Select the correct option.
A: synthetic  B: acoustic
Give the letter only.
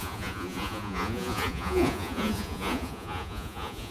A